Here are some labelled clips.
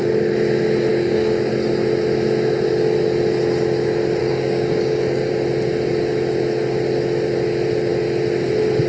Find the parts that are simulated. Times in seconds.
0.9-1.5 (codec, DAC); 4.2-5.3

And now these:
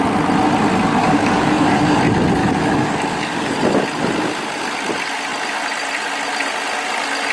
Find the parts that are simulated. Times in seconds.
1.0-2.0 (codec, DAC); 2.4-3.6

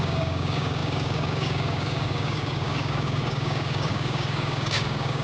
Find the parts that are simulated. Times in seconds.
0.0-5.2 (codec, DAC)

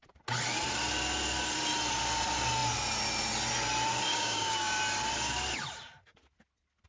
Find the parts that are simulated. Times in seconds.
4.1-4.8 (codec, DAC)

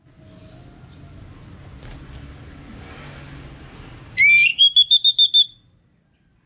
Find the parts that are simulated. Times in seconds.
4.5-5.1 (codec, DAC)

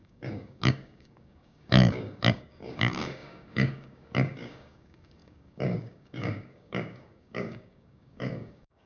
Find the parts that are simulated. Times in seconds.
0.0-8.9 (codec, DAC)

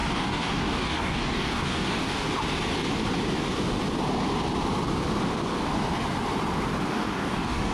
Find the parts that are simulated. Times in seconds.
0.0-2.3 (codec, DAC); 6.9-7.7